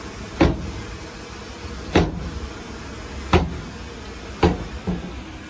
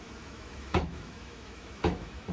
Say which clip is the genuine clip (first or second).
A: first